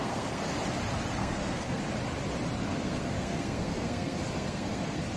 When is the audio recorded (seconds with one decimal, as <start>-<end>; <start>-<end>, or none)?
0.5-1.2; 1.8-2.7